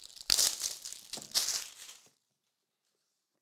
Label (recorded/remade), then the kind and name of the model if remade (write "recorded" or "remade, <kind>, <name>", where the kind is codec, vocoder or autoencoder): recorded